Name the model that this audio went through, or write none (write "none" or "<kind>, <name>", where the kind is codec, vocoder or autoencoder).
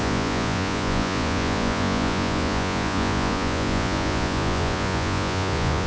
vocoder, Vocos